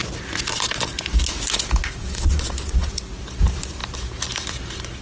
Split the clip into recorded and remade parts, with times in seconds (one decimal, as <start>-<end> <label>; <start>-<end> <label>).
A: 0.0-2.0 recorded; 2.0-3.0 remade; 3.0-5.0 recorded